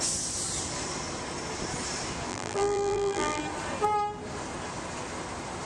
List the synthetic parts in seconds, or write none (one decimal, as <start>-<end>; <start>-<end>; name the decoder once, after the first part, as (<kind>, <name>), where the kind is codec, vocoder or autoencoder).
2.3-3.4 (vocoder, BigVGAN v2)